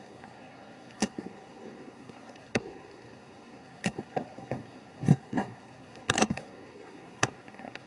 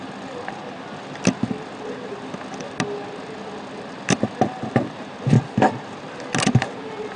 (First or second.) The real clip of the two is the second